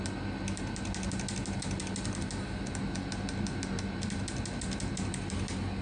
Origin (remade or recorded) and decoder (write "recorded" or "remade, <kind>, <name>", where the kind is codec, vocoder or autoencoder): recorded